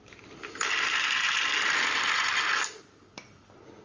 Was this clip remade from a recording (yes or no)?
no